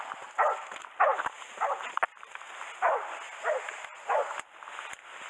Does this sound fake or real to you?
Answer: real